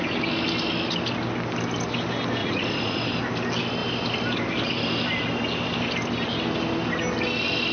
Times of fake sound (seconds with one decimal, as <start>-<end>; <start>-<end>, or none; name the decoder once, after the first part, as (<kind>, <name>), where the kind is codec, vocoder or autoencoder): 2.4-3.1 (vocoder, Vocos)